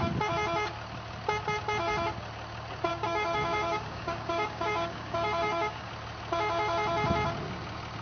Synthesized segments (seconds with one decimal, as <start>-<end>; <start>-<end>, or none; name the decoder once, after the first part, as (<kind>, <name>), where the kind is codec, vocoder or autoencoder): 2.9-5.9 (codec, DAC)